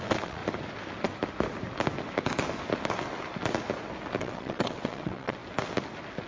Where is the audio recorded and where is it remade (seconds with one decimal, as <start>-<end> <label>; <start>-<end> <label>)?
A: 0.0-0.4 remade; 0.4-4.2 recorded; 4.2-5.4 remade; 5.4-6.3 recorded